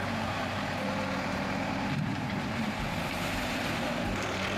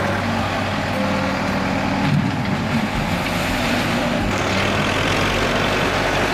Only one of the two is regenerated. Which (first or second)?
first